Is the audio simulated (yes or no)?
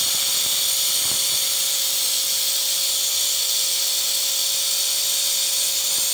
no